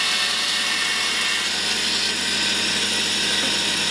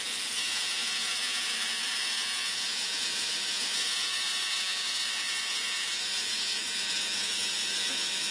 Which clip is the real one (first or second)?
first